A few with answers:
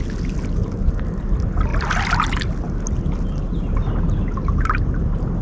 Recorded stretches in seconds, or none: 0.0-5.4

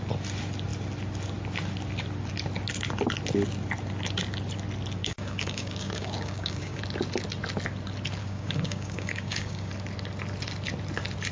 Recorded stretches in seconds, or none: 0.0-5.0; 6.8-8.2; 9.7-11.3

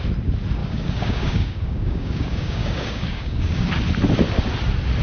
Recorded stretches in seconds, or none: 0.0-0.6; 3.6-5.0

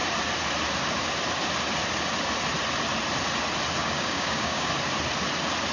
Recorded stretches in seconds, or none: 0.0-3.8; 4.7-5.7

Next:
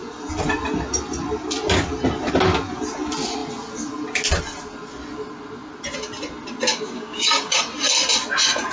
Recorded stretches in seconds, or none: 0.0-6.7; 7.6-8.7

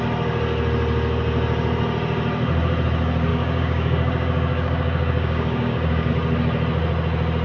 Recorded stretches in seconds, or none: 0.0-3.3; 6.1-7.4

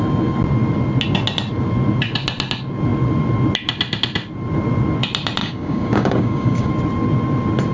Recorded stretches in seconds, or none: 0.0-5.4; 6.7-7.7